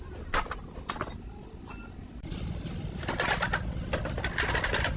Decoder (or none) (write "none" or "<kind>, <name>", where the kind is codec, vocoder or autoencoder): none